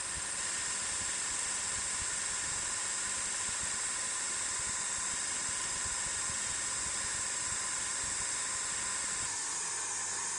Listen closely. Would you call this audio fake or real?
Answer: real